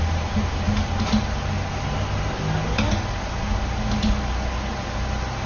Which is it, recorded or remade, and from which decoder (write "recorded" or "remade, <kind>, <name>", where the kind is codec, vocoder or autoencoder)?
recorded